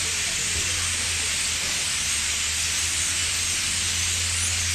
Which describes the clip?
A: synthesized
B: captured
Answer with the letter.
B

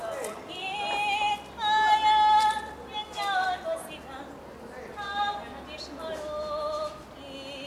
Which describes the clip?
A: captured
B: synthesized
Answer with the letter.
A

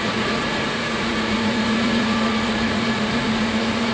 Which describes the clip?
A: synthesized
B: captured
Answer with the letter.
A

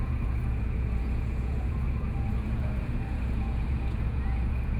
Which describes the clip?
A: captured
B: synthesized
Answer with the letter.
B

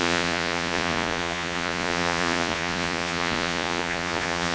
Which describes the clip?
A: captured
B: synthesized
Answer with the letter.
B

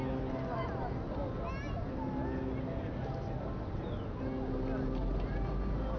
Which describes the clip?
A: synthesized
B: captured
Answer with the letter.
B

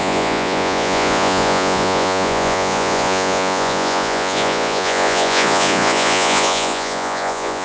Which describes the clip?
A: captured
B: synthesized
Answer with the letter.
B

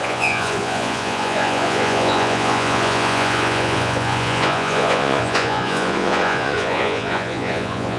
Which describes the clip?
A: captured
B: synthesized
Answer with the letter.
B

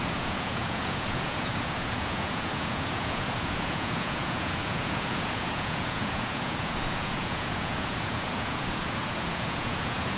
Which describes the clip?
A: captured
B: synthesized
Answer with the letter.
B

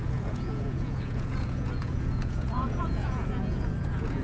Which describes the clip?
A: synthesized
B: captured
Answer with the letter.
A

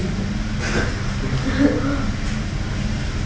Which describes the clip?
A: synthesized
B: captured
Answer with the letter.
B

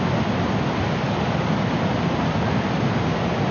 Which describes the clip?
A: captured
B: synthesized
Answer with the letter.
A